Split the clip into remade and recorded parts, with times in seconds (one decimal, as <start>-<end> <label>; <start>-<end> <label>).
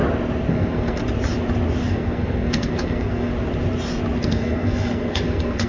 0.0-0.5 recorded; 0.5-1.0 remade; 1.0-1.8 recorded; 1.8-3.3 remade; 3.3-4.2 recorded; 4.2-5.7 remade